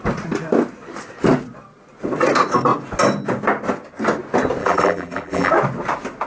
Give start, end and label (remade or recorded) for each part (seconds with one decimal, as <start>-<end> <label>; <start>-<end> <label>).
0.0-4.6 recorded; 4.6-5.5 remade; 5.5-6.3 recorded